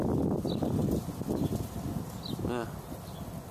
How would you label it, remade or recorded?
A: recorded